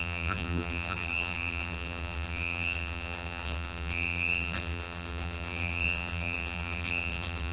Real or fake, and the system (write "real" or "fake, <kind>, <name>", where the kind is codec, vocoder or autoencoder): fake, vocoder, BigVGAN v2